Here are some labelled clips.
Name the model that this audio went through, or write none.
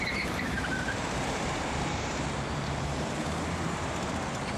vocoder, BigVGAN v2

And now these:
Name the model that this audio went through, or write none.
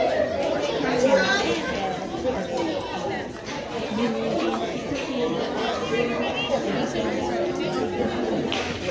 none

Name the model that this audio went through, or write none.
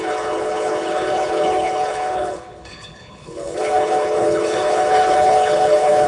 codec, HILCodec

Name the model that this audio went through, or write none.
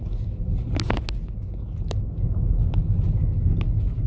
none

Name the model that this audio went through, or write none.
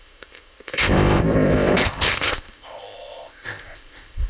codec, ZipCodec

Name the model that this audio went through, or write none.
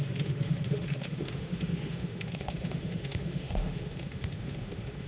autoencoder, DAC-VAE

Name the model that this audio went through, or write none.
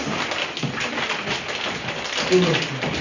none